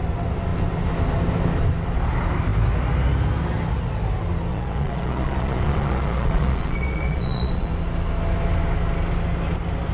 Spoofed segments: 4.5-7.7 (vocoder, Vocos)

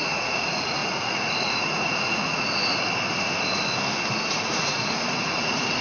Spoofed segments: 0.0-2.7 (vocoder, Vocos); 4.3-5.8

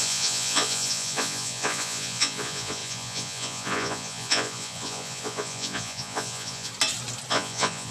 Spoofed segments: 0.0-6.7 (vocoder, Vocos); 7.3-7.9